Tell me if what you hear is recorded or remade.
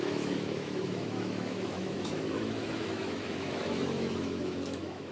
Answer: remade